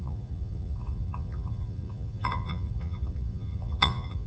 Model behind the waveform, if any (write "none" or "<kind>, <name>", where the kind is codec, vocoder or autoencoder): vocoder, Vocos